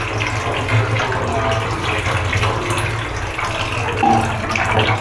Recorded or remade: recorded